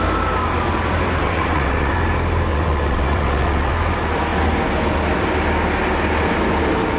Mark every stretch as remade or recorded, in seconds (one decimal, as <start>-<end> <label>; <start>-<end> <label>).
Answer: 0.0-1.2 recorded; 1.2-1.9 remade; 1.9-2.5 recorded; 2.5-3.7 remade; 3.7-7.0 recorded